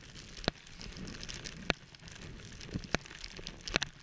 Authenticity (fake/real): real